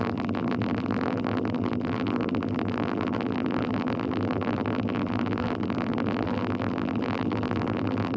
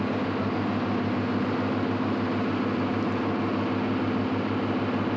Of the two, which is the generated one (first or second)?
first